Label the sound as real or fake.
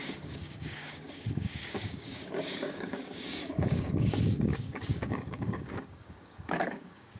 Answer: fake